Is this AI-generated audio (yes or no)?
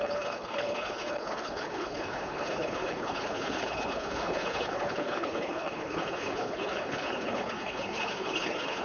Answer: yes